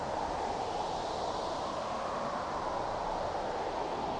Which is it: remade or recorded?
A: recorded